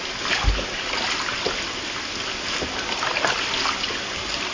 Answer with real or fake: real